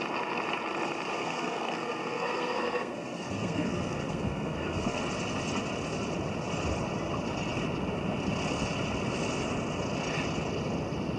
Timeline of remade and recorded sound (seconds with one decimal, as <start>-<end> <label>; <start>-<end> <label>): 0.0-1.1 recorded; 1.1-5.0 remade; 5.0-11.2 recorded